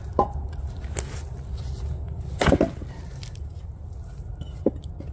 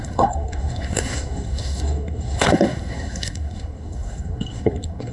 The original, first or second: first